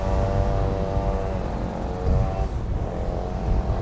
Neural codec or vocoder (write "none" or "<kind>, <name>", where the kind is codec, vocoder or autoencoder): none